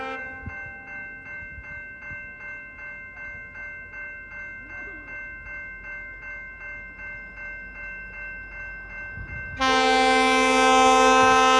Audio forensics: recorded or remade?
recorded